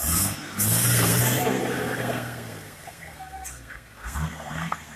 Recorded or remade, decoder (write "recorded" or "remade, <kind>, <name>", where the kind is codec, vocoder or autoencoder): remade, codec, SNAC